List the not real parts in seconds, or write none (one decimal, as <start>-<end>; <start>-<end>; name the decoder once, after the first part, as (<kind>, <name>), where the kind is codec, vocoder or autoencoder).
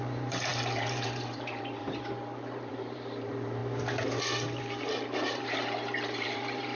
0.0-3.6 (vocoder, BigVGAN v2); 4.6-6.7